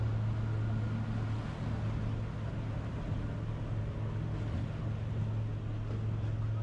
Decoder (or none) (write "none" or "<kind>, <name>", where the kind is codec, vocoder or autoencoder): none